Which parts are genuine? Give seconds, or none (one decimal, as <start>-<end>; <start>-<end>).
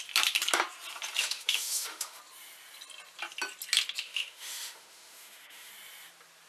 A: 0.0-1.2; 2.2-4.0; 5.7-6.5